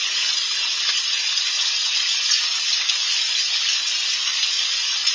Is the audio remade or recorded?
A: recorded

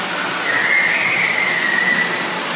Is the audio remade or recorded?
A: recorded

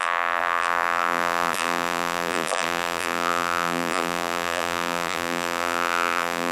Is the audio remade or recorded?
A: remade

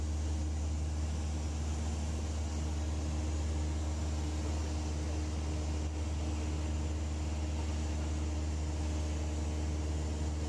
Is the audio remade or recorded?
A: recorded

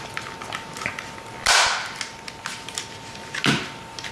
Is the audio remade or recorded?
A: recorded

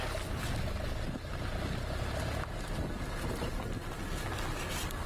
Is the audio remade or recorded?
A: recorded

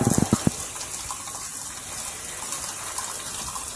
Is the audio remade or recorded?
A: recorded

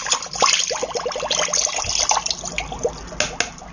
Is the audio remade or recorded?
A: recorded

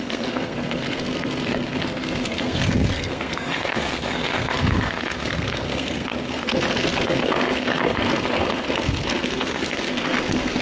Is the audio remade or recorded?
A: remade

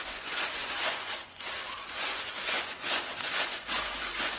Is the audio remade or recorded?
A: remade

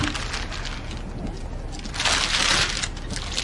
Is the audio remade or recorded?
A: recorded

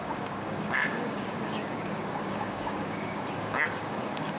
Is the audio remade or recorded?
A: remade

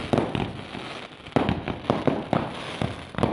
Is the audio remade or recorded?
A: recorded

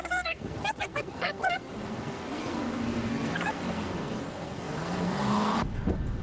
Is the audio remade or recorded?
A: remade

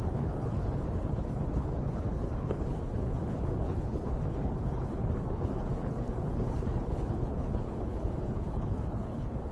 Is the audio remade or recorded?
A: remade